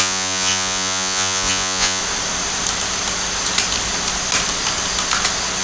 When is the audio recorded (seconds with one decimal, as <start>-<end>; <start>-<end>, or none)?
2.0-5.6